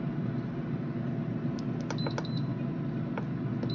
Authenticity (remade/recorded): recorded